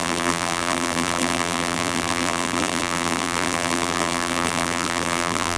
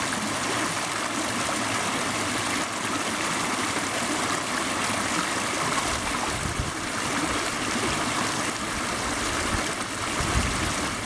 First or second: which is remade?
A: first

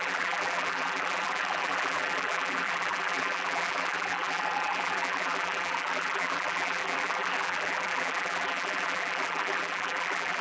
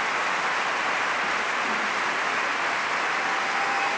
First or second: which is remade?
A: first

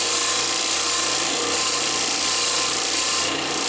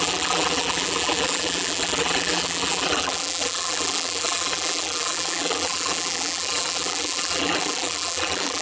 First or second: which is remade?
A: second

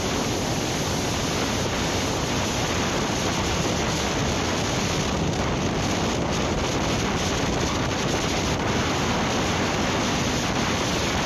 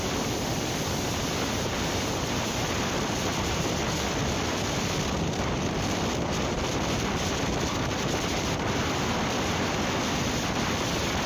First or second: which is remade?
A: second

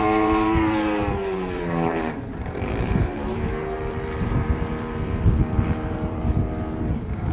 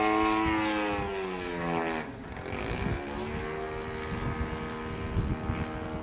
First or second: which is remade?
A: first